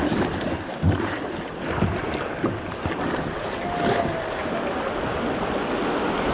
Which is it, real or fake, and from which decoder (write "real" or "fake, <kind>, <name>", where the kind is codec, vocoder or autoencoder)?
real